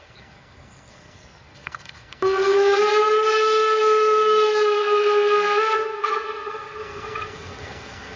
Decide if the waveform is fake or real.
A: fake